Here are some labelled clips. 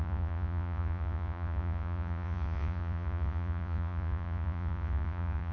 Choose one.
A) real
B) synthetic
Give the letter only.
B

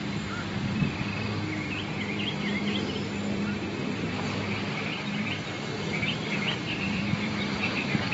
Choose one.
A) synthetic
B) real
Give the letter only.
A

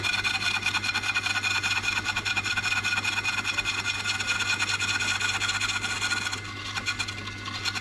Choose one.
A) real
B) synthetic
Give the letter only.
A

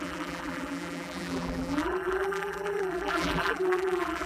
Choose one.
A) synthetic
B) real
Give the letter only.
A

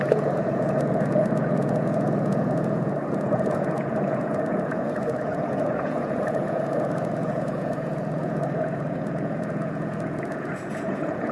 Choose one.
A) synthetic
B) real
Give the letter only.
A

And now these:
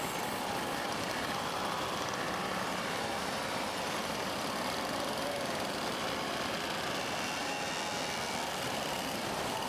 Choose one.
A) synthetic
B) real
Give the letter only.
A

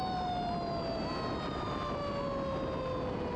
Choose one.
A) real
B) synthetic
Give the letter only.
A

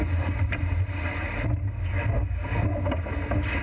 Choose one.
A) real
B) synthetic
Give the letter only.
A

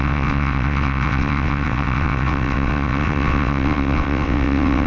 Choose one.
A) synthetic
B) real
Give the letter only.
A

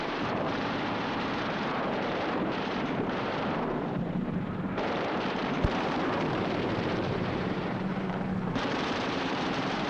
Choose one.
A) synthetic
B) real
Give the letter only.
A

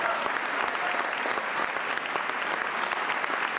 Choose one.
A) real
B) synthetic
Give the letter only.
A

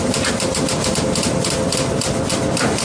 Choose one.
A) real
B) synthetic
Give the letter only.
B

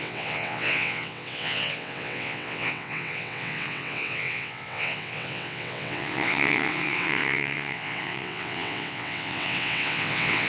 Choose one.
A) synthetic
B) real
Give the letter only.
A